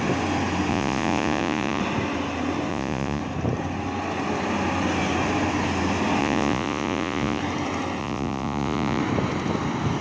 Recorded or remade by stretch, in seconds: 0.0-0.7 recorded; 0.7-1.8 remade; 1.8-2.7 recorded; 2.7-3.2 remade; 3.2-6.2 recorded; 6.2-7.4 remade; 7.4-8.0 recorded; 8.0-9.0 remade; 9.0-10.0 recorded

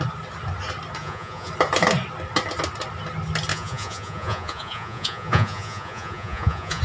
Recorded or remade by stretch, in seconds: 0.0-1.0 recorded; 1.0-1.5 remade; 1.5-3.5 recorded; 3.5-6.8 remade